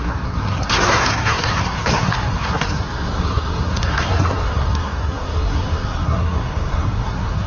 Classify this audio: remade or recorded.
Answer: remade